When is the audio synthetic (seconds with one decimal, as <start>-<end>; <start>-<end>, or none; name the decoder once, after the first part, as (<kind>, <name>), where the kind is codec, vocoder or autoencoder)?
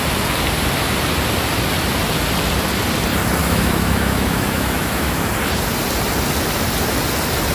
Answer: 3.4-5.3 (autoencoder, DAC-VAE)